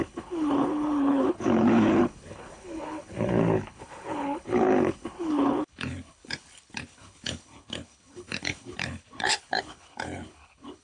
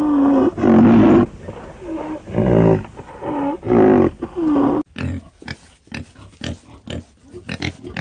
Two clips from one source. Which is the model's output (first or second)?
first